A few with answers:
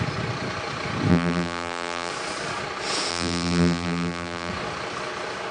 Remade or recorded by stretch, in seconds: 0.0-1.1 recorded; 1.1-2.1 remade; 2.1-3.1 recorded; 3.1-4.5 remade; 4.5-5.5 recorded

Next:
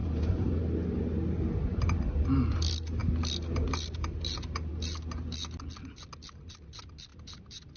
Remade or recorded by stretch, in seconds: 0.0-0.6 remade; 0.6-7.1 recorded; 7.1-7.8 remade

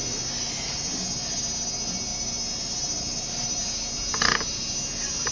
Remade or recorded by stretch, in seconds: 0.0-5.3 recorded

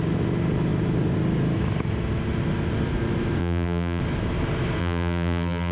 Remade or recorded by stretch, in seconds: 0.0-3.4 recorded; 3.4-4.0 remade; 4.0-4.8 recorded; 4.8-5.7 remade

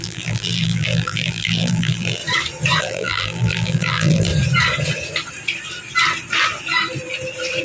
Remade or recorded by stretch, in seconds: 0.0-2.2 remade; 2.2-2.8 recorded; 2.8-4.3 remade; 4.3-7.6 recorded

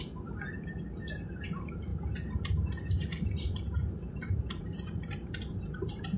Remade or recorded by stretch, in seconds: 0.0-6.2 remade